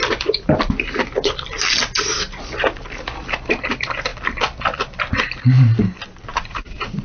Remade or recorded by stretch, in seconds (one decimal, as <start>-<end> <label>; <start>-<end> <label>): 0.0-6.3 recorded; 6.3-7.0 remade